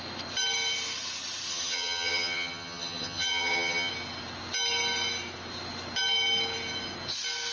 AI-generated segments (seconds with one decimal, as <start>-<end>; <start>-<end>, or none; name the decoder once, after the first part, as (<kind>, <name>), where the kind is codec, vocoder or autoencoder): 1.5-3.9 (vocoder, HiFi-GAN)

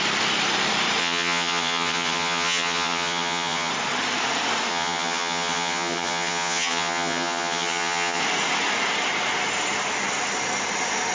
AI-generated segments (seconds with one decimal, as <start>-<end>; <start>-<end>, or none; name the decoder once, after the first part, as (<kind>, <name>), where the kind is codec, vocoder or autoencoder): 1.0-3.7 (vocoder, HiFi-GAN); 4.7-8.2

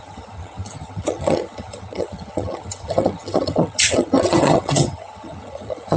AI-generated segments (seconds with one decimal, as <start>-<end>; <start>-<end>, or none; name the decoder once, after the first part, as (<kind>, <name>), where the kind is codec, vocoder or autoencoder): 0.0-6.0 (vocoder, HiFi-GAN)

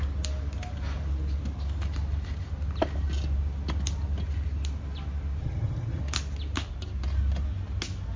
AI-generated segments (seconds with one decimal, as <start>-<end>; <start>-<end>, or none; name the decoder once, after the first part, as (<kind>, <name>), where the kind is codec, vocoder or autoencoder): 5.4-6.0 (vocoder, HiFi-GAN)

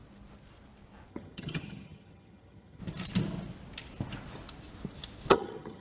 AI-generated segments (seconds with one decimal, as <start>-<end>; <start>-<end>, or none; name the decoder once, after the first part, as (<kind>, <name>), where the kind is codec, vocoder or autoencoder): 1.1-2.8 (vocoder, HiFi-GAN); 5.3-5.8